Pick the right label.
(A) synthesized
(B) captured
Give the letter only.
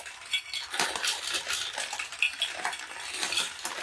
B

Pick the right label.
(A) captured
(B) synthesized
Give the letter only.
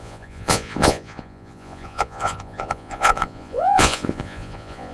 B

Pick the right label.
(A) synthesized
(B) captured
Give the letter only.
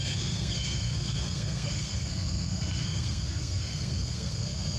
A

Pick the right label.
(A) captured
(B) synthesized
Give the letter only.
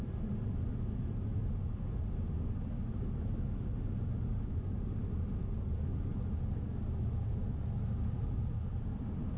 A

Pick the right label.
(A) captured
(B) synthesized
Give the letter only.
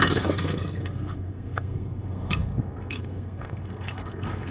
B